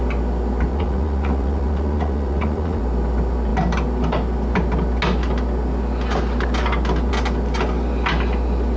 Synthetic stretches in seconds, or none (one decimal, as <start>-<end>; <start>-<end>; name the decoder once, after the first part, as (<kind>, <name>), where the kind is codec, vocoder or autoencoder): 0.7-2.8 (vocoder, Vocos)